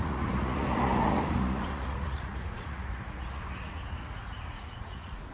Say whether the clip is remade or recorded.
remade